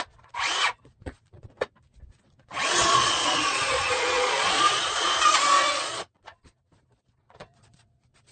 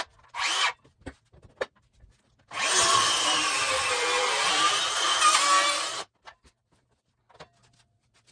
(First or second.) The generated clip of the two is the first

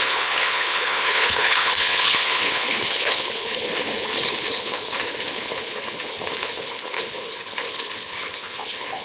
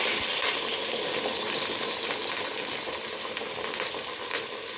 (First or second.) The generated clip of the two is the first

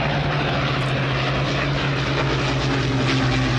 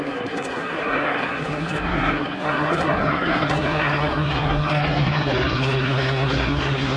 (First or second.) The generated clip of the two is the second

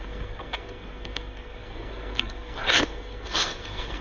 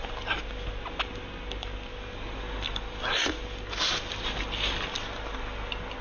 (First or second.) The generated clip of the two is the first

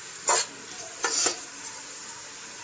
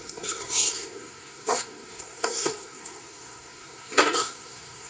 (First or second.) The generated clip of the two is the second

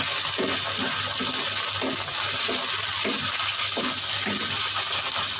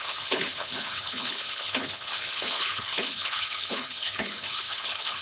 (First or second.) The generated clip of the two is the second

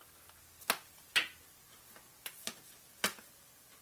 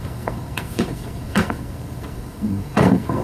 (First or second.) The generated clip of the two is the second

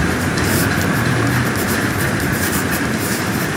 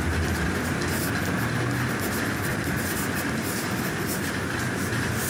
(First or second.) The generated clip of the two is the first